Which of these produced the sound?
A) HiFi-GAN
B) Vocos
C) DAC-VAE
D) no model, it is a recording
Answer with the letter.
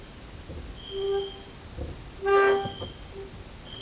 D